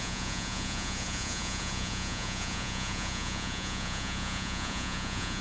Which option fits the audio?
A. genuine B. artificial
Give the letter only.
B